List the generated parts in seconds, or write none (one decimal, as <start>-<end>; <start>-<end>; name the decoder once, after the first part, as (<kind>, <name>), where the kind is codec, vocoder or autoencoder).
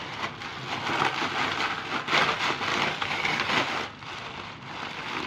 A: 2.7-3.5 (codec, DAC)